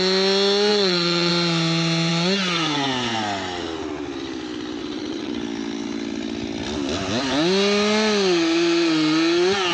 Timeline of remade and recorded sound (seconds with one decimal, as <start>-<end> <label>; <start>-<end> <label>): 0.0-0.7 recorded; 0.7-1.3 remade; 1.3-4.8 recorded; 4.8-5.3 remade; 5.3-9.7 recorded